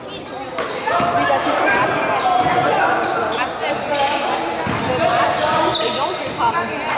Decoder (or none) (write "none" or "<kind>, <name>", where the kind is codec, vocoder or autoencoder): none